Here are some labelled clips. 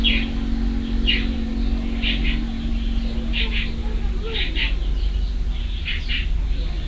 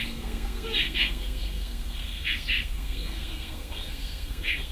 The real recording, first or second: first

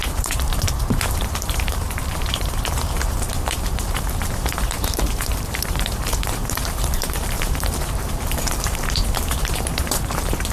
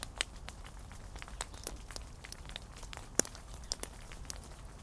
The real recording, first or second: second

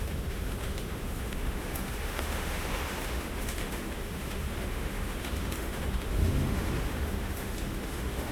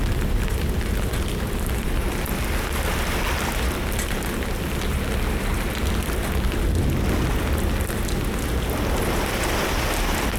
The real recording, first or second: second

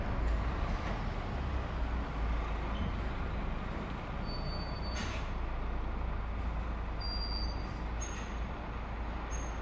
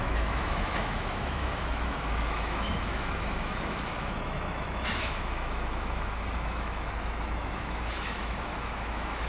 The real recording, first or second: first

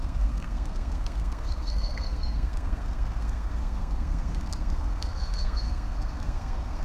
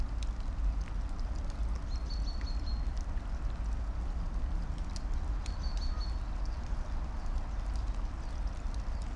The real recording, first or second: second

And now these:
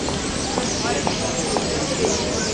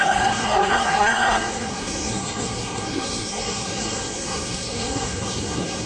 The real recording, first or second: first